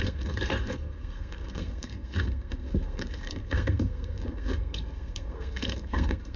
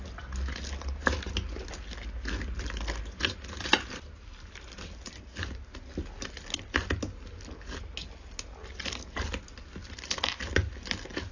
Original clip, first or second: second